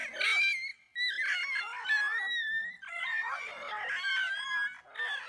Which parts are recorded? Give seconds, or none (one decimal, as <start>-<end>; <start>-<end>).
0.0-2.9; 3.7-5.3